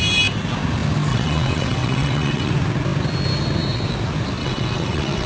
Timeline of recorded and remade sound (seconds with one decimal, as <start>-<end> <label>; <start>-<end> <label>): 0.0-1.1 recorded; 1.1-2.5 remade; 2.5-4.4 recorded; 4.4-5.3 remade